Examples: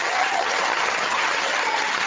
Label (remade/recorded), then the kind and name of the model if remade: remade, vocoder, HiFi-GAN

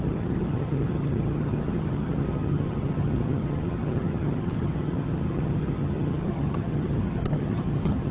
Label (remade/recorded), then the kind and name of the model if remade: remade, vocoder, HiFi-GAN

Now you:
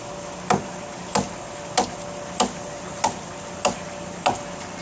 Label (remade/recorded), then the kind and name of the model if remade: recorded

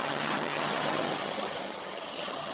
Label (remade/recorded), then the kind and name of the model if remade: remade, vocoder, HiFi-GAN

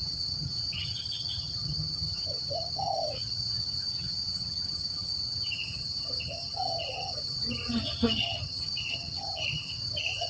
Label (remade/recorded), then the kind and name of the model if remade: remade, vocoder, HiFi-GAN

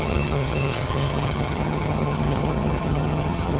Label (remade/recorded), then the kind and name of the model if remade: remade, vocoder, HiFi-GAN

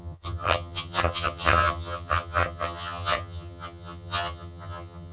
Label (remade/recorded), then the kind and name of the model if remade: remade, vocoder, HiFi-GAN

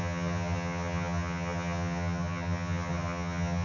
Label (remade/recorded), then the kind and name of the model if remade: remade, vocoder, HiFi-GAN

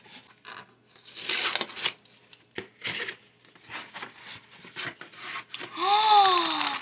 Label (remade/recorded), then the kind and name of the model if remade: recorded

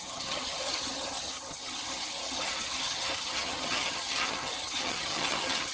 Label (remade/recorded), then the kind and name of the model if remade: remade, vocoder, HiFi-GAN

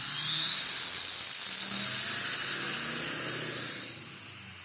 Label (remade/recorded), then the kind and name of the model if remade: recorded